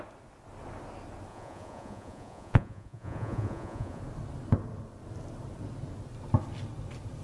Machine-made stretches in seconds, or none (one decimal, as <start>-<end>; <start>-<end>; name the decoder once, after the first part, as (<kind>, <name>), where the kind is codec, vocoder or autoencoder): 1.3-4.0 (vocoder, Vocos)